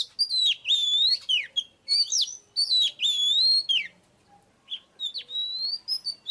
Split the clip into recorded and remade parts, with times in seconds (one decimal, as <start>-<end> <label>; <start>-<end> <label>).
0.0-6.3 recorded